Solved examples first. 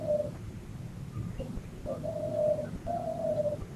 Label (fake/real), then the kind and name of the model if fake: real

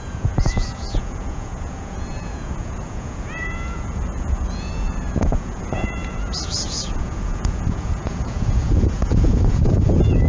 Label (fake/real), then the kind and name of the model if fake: fake, vocoder, Vocos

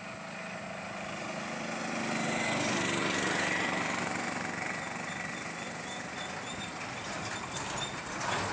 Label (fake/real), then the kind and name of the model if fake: real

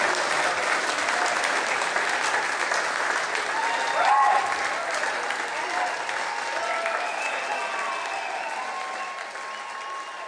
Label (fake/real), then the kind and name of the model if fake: real